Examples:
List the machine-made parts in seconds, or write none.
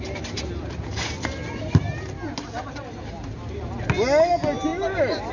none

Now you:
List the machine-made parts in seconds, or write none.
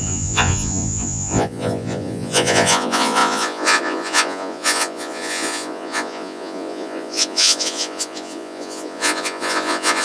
0.0-10.0 (vocoder, Vocos)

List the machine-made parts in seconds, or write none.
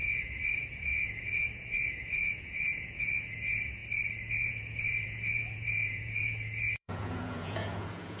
0.0-3.8 (vocoder, Vocos); 4.3-8.2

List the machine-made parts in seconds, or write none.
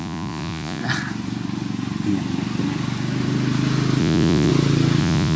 0.0-0.8 (vocoder, Vocos); 4.0-4.5; 5.0-5.4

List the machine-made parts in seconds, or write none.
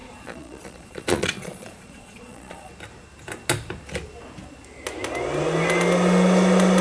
0.0-2.7 (vocoder, Vocos)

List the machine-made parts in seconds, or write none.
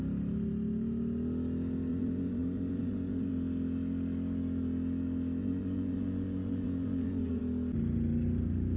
1.9-3.3 (vocoder, Vocos); 5.4-7.4